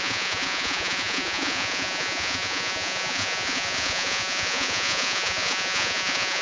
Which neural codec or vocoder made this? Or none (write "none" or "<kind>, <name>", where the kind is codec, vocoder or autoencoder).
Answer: vocoder, Vocos